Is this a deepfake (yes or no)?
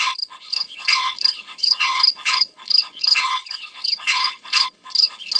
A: yes